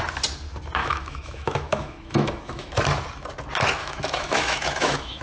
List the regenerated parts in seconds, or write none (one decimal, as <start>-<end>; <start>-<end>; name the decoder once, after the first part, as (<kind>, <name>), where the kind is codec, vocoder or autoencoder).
0.8-2.7 (autoencoder, DAC-VAE); 3.8-5.2